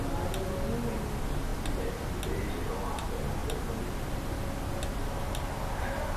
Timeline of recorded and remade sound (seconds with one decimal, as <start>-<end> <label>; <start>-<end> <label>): 0.0-6.2 recorded